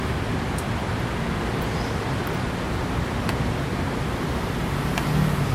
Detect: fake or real real